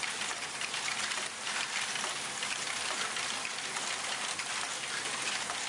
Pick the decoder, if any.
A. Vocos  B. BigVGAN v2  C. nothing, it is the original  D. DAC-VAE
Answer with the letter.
C